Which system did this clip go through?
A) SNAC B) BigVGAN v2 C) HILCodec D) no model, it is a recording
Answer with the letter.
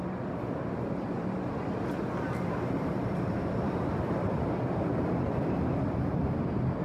B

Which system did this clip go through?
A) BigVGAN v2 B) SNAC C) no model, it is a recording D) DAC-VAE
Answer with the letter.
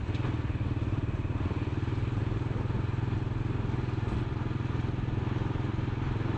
C